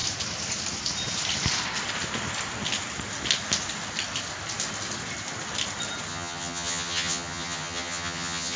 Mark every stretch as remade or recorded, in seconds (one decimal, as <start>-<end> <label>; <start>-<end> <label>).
0.0-6.1 recorded; 6.1-8.6 remade